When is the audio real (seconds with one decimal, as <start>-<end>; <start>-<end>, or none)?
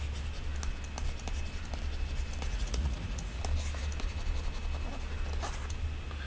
0.0-2.5; 3.4-6.3